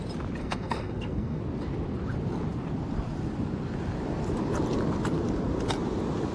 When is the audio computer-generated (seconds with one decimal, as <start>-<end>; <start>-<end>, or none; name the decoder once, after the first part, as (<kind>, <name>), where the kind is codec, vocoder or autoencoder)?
0.4-1.4 (codec, SNAC)